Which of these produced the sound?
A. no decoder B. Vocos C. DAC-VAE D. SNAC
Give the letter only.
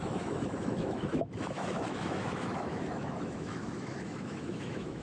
C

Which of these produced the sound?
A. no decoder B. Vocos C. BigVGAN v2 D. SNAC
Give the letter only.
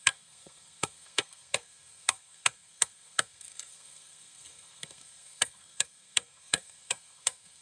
D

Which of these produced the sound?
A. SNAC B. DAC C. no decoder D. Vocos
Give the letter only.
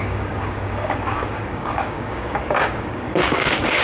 B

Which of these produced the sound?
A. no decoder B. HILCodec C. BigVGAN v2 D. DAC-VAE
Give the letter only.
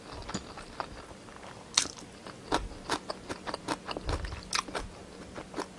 A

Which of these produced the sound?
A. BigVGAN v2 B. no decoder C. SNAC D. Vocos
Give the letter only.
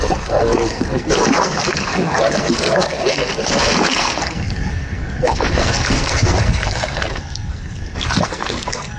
C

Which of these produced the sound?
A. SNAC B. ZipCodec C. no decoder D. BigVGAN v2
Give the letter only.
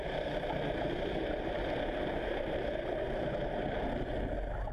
C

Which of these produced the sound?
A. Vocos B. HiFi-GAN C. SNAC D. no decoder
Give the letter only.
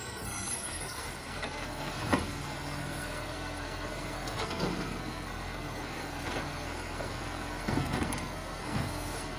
C